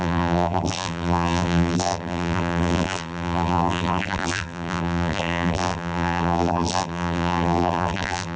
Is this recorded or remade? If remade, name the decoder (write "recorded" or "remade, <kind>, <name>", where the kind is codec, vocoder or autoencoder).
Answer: remade, vocoder, BigVGAN v2